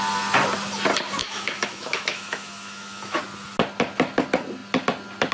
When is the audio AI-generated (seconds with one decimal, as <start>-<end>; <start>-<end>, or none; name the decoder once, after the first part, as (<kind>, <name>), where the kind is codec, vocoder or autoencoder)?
1.2-3.2 (autoencoder, DAC-VAE)